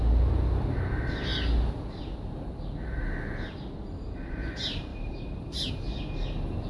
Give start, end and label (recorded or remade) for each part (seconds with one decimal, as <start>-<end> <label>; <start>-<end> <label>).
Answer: 0.0-4.9 recorded; 4.9-5.7 remade; 5.7-6.7 recorded